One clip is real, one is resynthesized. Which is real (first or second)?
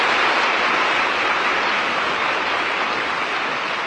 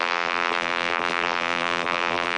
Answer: first